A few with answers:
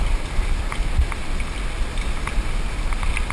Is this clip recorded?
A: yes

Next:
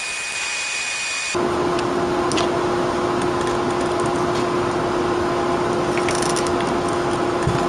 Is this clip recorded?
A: yes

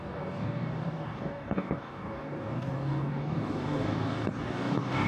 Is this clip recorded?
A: no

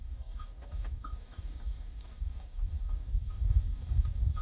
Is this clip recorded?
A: no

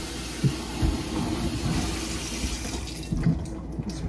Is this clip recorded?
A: yes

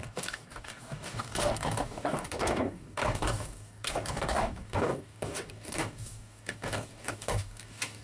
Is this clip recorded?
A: no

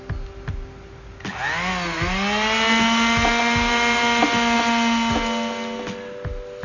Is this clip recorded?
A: yes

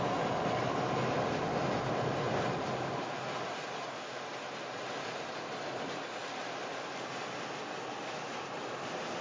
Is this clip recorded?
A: yes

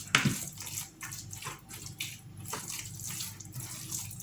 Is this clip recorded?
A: yes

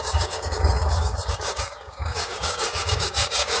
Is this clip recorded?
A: no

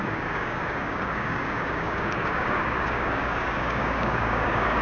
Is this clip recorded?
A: no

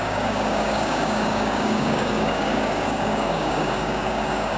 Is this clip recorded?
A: no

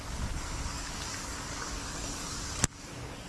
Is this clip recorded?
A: no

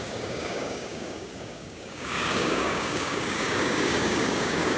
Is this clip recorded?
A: no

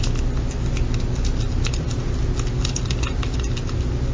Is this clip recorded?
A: yes